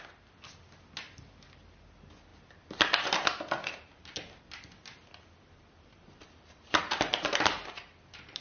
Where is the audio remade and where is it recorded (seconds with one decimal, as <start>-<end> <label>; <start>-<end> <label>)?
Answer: 0.0-2.3 recorded; 2.3-4.4 remade; 4.4-5.9 recorded; 5.9-8.4 remade